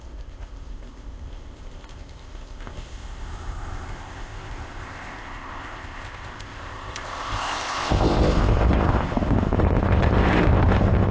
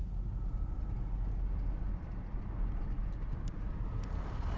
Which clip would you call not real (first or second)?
first